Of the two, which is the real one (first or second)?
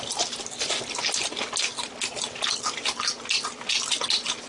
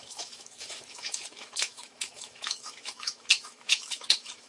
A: first